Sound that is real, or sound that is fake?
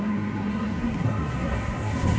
fake